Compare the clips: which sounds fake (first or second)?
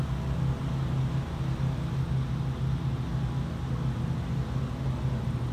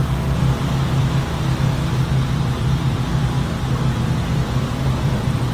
second